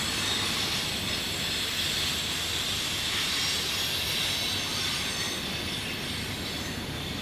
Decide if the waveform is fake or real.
real